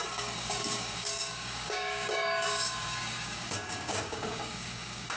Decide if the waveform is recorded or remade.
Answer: remade